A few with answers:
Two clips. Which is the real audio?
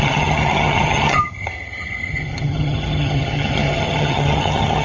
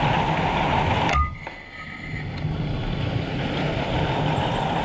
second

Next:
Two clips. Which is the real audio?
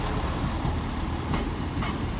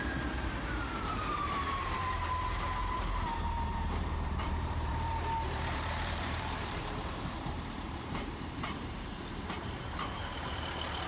first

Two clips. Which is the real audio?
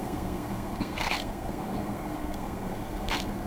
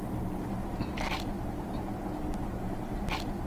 second